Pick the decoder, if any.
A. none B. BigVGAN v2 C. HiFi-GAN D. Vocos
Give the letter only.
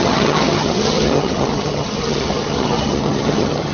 C